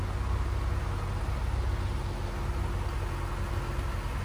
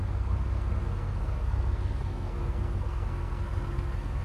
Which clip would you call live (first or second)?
first